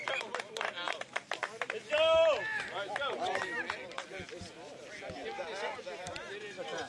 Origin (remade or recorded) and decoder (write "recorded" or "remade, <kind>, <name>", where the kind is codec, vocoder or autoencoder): recorded